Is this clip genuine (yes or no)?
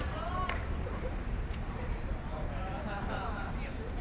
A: no